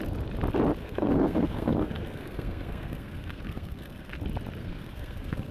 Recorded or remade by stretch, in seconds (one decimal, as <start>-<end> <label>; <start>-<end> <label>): 0.0-0.8 recorded; 0.8-4.1 remade; 4.1-4.6 recorded; 4.6-5.5 remade